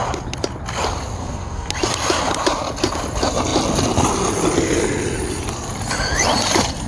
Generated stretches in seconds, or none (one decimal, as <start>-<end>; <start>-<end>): 1.2-1.7